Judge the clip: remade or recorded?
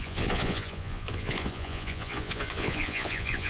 remade